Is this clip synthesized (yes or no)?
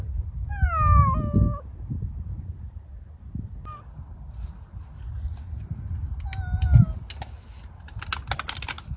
no